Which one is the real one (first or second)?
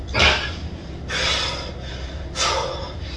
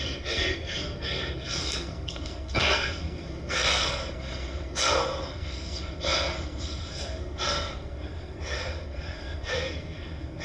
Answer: first